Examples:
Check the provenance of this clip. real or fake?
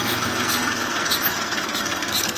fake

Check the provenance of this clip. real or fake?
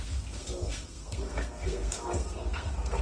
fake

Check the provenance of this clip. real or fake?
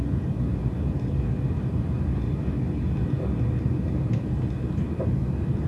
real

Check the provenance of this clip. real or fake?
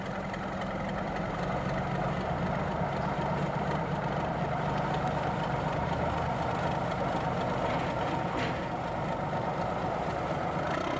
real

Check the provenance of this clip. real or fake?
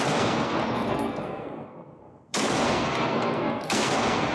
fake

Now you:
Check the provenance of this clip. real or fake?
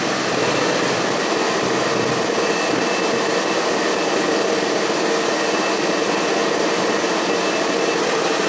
real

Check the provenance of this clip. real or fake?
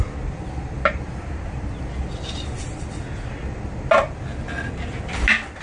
real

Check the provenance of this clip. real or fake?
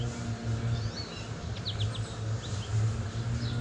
real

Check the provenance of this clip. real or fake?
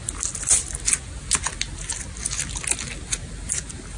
real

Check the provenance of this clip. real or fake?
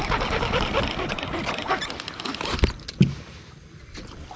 real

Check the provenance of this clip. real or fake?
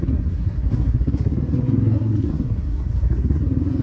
fake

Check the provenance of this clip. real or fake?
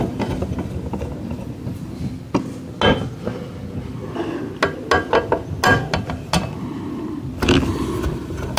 real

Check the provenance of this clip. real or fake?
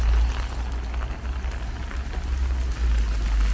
real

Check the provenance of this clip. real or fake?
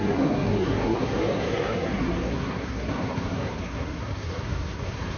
fake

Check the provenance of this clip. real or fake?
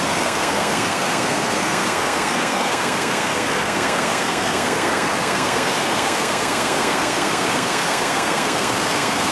fake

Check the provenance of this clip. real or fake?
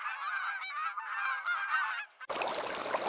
real